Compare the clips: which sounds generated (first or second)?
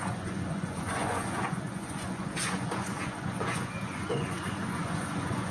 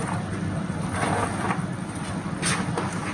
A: first